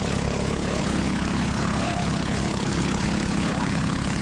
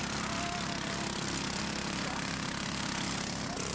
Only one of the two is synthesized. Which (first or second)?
first